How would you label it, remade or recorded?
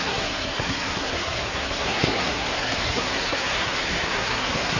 remade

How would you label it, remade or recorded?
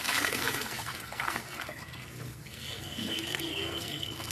remade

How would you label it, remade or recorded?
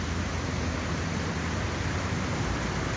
remade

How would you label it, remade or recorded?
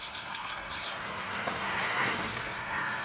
remade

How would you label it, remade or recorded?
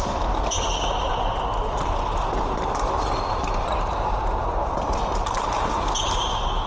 recorded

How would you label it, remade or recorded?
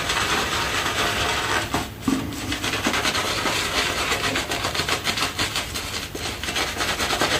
remade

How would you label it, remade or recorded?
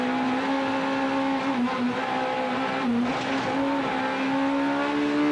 recorded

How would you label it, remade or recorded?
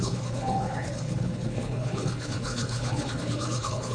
remade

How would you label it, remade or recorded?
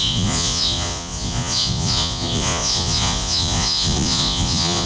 remade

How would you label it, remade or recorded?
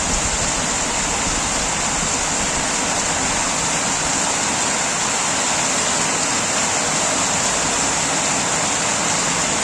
recorded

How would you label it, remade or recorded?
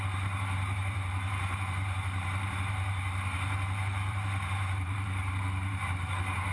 remade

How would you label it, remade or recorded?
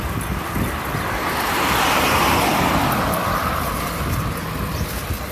recorded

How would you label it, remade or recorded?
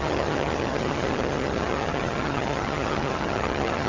remade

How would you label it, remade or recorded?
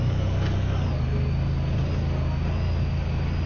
recorded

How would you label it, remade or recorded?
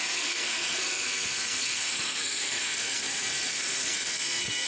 remade